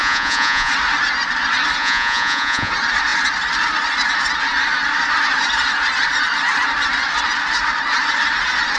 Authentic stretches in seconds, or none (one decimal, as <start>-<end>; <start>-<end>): 0.7-1.8; 2.7-8.8